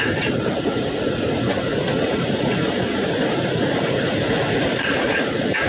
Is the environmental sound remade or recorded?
remade